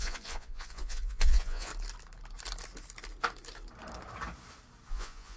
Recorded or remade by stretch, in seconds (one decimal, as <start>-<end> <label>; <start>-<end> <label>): 0.0-1.7 remade; 1.7-4.9 recorded; 4.9-5.4 remade